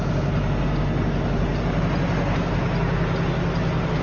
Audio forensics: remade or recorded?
recorded